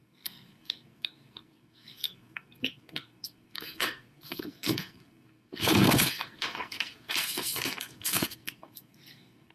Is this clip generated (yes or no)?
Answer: yes